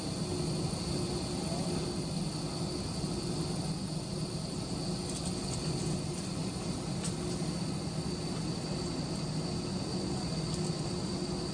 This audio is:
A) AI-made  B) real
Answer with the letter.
B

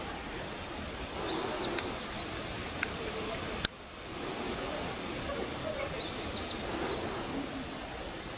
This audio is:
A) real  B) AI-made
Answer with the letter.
A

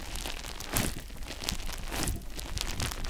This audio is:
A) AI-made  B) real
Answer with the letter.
B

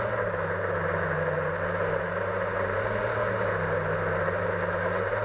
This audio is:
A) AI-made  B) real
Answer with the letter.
B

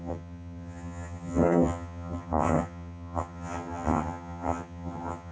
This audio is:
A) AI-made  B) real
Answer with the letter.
A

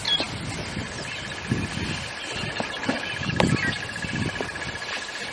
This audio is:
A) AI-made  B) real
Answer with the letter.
B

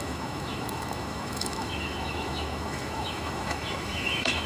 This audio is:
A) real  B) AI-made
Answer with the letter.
B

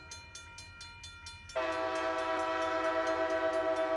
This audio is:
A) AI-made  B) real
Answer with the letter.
B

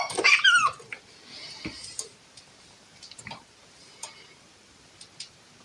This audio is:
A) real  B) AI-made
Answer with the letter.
B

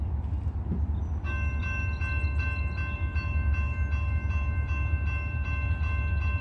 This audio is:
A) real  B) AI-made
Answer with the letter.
A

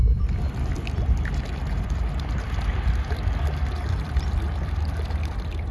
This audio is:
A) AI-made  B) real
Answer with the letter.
B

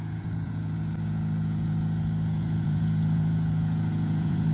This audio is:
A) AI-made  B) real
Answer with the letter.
A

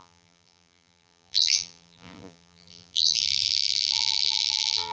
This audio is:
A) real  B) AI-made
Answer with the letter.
B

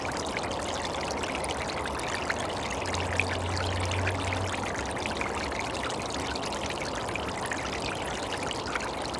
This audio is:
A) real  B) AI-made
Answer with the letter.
A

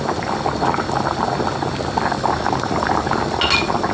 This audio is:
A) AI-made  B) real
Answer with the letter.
B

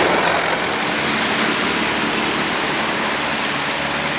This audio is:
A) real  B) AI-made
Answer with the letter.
A